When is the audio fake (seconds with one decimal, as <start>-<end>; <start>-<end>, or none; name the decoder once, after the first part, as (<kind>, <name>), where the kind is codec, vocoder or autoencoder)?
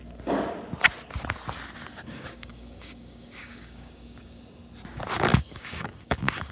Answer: 1.9-4.4 (codec, DAC); 5.3-6.5